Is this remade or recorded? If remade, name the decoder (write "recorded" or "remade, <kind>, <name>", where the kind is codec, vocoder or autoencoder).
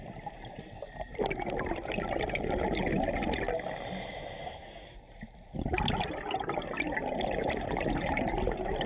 recorded